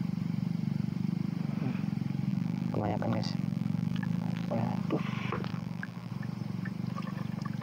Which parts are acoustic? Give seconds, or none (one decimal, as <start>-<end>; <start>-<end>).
0.0-2.3; 4.8-5.5; 6.1-7.6